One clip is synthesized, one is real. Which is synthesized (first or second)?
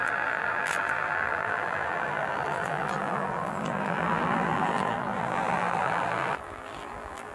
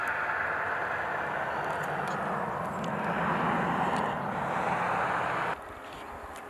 first